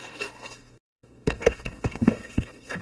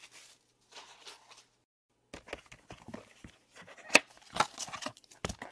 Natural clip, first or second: second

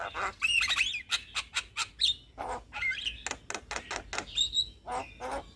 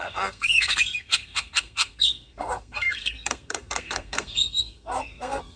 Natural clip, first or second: first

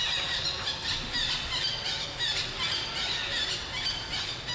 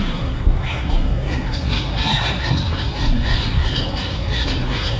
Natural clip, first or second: first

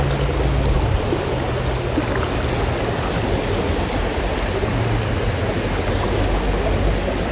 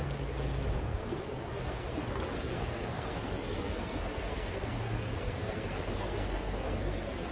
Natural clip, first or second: first